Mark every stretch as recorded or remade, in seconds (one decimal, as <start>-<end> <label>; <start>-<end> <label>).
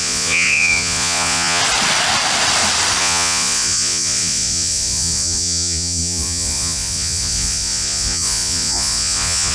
0.0-1.6 remade; 1.6-3.0 recorded; 3.0-9.5 remade